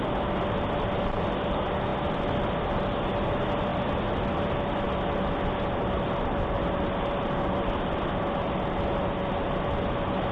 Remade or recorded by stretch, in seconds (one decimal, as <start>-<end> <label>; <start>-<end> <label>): 0.0-10.3 recorded